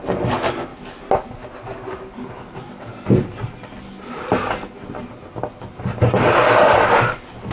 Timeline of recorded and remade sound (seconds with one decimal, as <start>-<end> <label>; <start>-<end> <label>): 0.0-7.5 recorded